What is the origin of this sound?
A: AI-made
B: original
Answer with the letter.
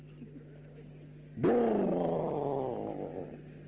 B